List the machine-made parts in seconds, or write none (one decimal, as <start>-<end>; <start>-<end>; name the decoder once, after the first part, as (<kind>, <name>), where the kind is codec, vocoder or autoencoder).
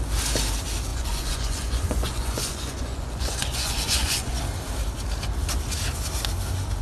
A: 0.9-4.4 (vocoder, Vocos)